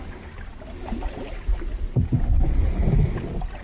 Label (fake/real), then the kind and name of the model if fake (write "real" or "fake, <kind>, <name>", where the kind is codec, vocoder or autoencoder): real